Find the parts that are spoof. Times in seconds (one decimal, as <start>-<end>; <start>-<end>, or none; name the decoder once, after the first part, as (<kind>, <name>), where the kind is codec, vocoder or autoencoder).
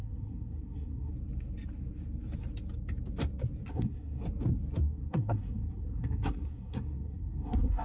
0.0-1.1 (codec, SNAC); 3.7-4.2; 4.8-7.8